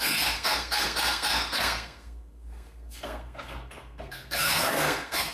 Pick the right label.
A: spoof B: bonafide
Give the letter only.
A